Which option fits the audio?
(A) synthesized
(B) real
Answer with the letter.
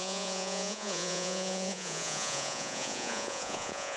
A